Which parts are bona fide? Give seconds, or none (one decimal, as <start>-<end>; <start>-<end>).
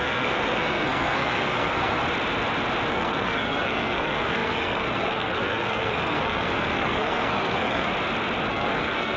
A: 2.0-2.9; 7.9-8.5